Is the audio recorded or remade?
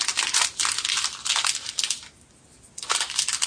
recorded